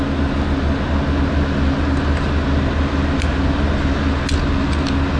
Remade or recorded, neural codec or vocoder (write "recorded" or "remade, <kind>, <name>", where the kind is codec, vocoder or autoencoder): recorded